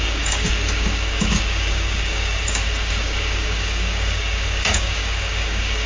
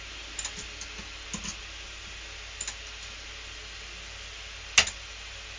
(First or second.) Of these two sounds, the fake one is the first